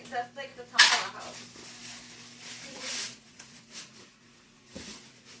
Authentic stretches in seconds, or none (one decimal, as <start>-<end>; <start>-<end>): 0.0-2.7